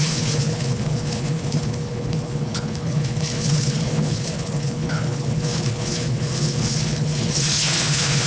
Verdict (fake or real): fake